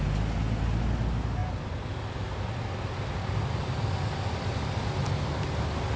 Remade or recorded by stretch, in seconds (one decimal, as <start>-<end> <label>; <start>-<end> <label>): 0.0-6.0 recorded